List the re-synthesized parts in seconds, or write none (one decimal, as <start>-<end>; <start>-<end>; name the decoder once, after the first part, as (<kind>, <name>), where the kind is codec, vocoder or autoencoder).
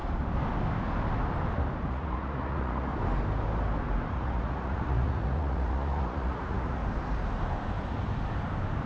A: 1.8-2.9 (vocoder, Vocos); 4.1-6.8